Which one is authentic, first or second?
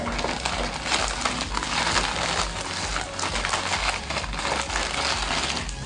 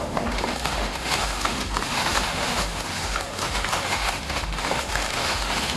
first